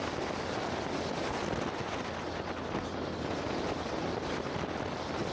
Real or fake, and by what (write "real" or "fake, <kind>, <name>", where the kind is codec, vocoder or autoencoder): real